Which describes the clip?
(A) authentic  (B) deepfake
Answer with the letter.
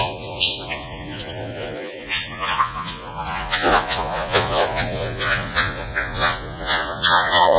B